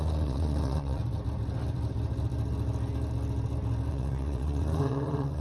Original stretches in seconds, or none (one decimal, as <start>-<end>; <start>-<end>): 1.0-3.9